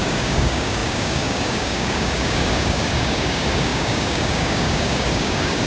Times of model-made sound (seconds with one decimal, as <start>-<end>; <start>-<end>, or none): 0.0-5.7